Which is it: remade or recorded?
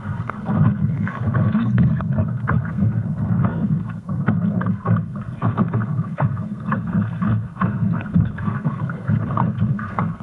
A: remade